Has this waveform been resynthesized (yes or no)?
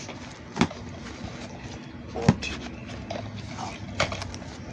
no